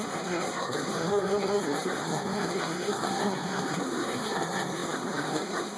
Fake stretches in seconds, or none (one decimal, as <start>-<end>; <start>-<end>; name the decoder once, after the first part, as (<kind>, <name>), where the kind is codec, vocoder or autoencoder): 0.0-5.8 (codec, SNAC)